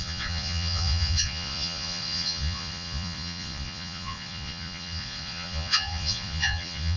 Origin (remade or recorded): remade